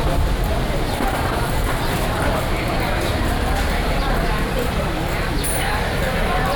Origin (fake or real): fake